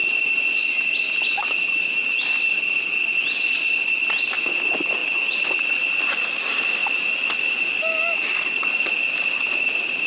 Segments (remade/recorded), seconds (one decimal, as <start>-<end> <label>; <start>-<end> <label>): 0.0-10.1 recorded